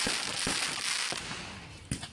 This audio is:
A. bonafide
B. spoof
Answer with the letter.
A